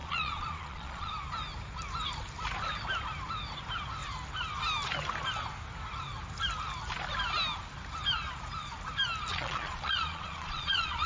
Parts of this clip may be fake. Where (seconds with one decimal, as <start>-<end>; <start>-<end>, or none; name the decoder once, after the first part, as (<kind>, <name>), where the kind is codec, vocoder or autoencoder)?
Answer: 0.0-1.1 (vocoder, Vocos); 9.3-11.1